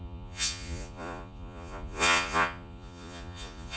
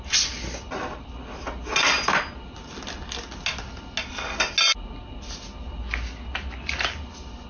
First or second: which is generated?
first